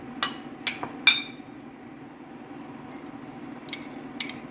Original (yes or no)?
yes